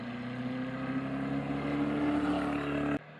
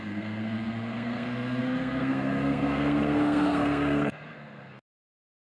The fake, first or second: second